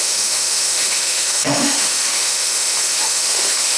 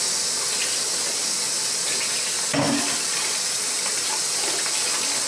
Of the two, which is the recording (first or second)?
second